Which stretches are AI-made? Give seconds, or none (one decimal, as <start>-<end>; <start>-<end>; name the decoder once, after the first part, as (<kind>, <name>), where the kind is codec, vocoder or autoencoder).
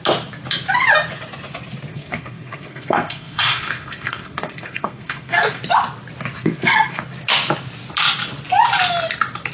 1.9-5.6 (codec, SNAC); 6.4-7.0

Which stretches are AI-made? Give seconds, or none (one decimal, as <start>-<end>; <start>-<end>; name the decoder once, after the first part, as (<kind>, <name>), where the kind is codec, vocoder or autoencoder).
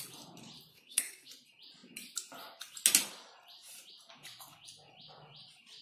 0.7-1.3 (codec, SNAC)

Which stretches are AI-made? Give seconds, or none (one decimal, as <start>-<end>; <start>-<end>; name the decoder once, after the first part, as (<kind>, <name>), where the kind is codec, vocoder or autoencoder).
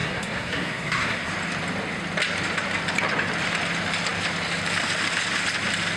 0.0-1.3 (codec, SNAC)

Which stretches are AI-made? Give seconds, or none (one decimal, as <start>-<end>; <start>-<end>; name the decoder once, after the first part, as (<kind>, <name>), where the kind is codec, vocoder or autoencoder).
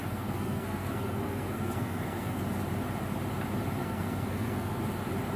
0.0-2.4 (codec, SNAC); 3.8-4.8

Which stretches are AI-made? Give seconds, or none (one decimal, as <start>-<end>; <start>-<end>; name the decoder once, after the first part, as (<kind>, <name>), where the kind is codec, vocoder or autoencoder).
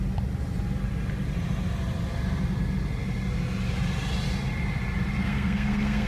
5.2-6.1 (codec, SNAC)